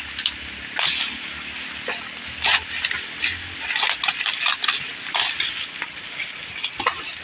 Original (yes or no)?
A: yes